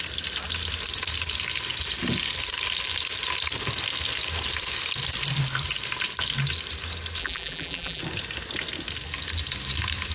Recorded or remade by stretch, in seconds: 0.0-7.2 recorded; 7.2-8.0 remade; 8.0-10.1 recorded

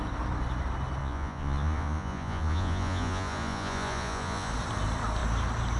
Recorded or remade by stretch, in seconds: 0.0-1.0 recorded; 1.0-4.5 remade; 4.5-5.8 recorded

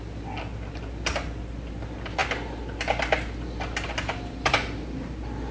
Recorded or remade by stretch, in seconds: 0.0-5.5 recorded